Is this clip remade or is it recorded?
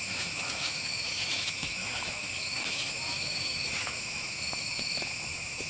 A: remade